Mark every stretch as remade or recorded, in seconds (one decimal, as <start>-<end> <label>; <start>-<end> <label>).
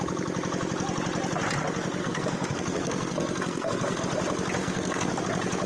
0.0-2.0 recorded; 2.0-4.0 remade; 4.0-4.6 recorded; 4.6-5.2 remade; 5.2-5.7 recorded